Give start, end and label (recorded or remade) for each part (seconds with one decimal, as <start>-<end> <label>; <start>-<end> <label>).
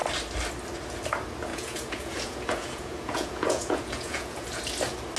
0.0-1.5 recorded; 1.5-4.6 remade; 4.6-5.2 recorded